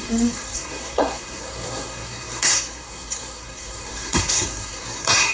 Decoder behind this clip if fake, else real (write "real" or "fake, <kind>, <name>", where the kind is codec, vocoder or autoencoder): fake, codec, SNAC